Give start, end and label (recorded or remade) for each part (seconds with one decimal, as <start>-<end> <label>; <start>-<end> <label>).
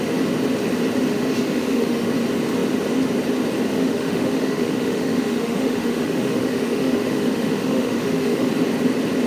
0.0-1.1 recorded; 1.1-2.1 remade; 2.1-3.7 recorded; 3.7-8.5 remade; 8.5-9.3 recorded